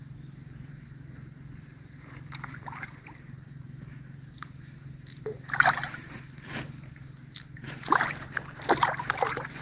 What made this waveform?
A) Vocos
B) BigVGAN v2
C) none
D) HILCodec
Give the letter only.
B